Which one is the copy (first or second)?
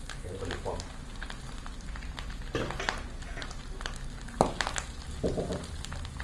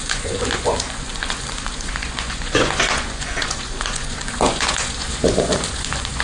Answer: second